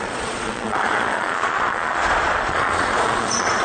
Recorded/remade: remade